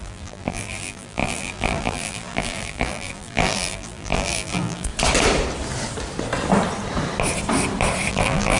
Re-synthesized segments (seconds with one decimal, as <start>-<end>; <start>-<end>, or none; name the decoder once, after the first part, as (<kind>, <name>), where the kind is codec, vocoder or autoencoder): 0.0-4.9 (vocoder, BigVGAN v2); 8.1-8.6